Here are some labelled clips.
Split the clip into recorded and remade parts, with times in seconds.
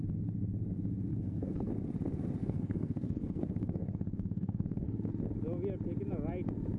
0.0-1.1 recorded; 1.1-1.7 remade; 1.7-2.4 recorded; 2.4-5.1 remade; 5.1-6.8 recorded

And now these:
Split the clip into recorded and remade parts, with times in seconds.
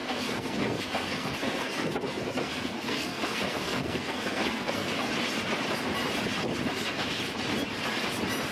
0.0-5.1 remade; 5.1-6.7 recorded; 6.7-7.2 remade; 7.2-8.5 recorded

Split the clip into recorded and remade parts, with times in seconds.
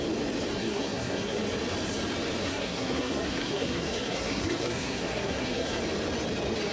0.0-0.5 recorded; 0.5-1.4 remade; 1.4-2.4 recorded; 2.4-5.8 remade; 5.8-6.7 recorded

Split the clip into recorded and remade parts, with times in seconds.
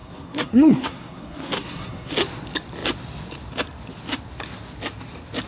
0.0-2.1 remade; 2.1-5.5 recorded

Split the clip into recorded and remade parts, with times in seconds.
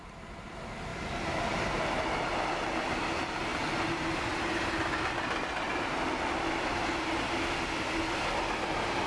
0.0-9.1 recorded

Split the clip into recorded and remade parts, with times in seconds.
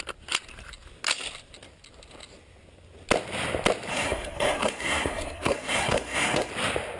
0.0-3.9 recorded; 3.9-6.5 remade; 6.5-7.0 recorded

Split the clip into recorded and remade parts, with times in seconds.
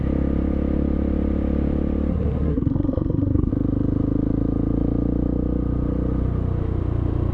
0.0-2.1 recorded; 2.1-3.5 remade; 3.5-7.3 recorded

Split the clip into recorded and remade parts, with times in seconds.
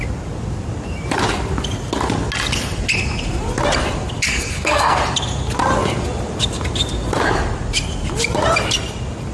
0.0-4.3 recorded; 4.3-5.0 remade; 5.0-9.3 recorded